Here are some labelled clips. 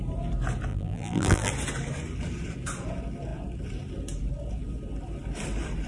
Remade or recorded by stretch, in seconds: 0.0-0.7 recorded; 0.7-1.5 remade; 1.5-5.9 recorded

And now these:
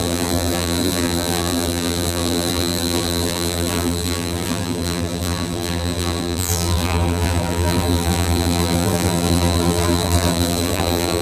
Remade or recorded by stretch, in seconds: 0.0-11.2 remade

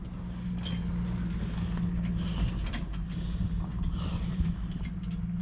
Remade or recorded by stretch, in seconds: 0.0-3.7 recorded; 3.7-4.6 remade; 4.6-5.4 recorded

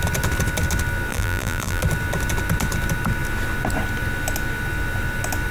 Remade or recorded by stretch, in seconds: 0.0-1.1 recorded; 1.1-1.8 remade; 1.8-5.5 recorded

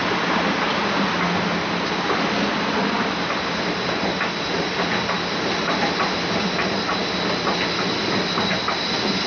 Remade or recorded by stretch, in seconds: 0.0-9.3 recorded

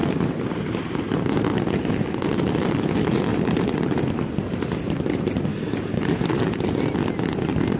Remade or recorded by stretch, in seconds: 0.0-1.6 remade; 1.6-3.3 recorded; 3.3-6.4 remade; 6.4-7.8 recorded

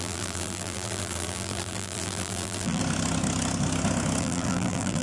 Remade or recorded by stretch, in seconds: 0.0-2.8 remade; 2.8-4.2 recorded; 4.2-5.0 remade